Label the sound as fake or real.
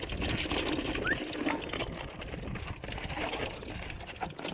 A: real